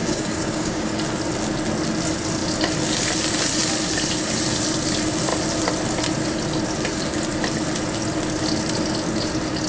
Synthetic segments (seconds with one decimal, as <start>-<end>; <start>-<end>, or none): 0.0-0.9